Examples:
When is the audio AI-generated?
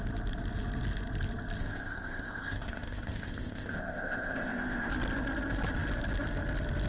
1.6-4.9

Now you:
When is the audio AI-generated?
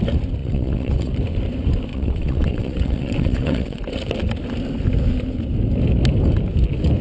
0.4-1.1; 1.9-3.8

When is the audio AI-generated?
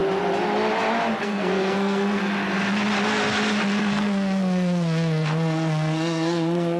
1.2-2.2; 3.8-6.8